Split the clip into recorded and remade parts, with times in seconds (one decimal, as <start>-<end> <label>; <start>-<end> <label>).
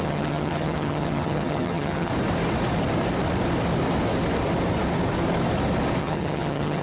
0.0-2.1 remade; 2.1-6.0 recorded; 6.0-6.8 remade